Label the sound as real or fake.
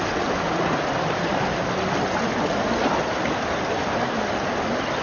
real